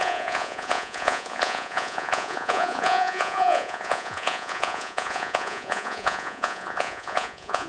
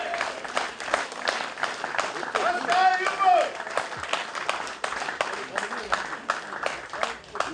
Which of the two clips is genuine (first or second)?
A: second